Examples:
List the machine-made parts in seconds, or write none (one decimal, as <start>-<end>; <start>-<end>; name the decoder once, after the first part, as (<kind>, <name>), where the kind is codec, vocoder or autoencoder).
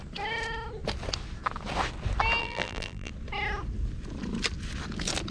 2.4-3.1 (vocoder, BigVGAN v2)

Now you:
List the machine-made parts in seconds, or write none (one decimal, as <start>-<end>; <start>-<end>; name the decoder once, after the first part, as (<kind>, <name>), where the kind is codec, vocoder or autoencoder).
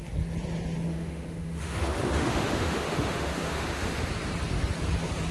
0.9-4.1 (autoencoder, DAC-VAE)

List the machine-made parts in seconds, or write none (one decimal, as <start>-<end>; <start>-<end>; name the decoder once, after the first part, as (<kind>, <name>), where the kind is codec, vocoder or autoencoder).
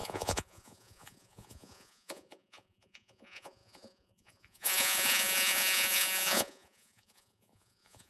0.0-8.1 (vocoder, Vocos)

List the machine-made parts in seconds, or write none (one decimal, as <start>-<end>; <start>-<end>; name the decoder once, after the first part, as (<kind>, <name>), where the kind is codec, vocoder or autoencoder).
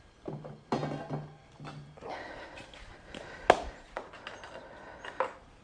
none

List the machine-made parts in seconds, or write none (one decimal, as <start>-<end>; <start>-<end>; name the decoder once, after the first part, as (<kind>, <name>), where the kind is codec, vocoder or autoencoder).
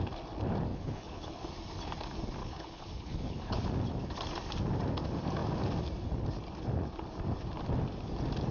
0.7-1.4 (codec, HILCodec); 2.4-3.7